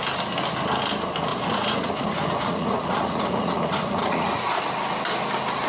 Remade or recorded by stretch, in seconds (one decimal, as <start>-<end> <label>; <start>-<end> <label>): 0.0-1.3 recorded; 1.3-4.6 remade; 4.6-5.7 recorded